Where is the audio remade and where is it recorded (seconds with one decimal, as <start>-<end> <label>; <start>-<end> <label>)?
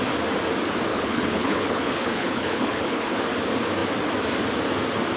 0.0-0.9 recorded; 0.9-3.1 remade; 3.1-5.2 recorded